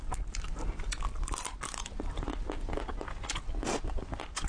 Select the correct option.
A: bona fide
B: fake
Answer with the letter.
A